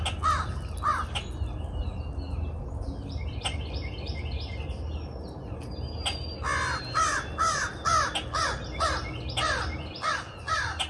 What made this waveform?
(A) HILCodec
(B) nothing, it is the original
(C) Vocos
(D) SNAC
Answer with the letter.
B